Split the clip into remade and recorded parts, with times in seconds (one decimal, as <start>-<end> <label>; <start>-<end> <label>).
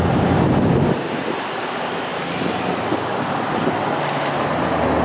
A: 0.0-5.0 recorded